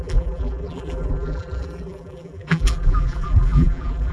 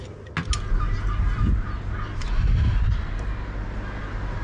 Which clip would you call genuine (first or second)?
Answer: second